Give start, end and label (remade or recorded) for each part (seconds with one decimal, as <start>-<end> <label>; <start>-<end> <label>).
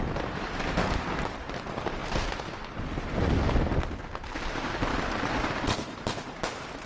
0.0-2.0 remade; 2.0-4.4 recorded; 4.4-6.9 remade